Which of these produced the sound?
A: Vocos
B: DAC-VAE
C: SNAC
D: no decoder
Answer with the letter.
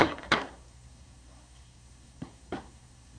C